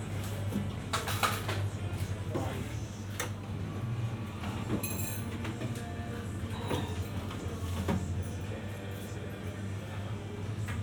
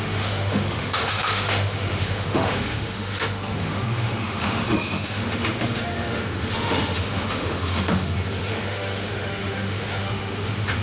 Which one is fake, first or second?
second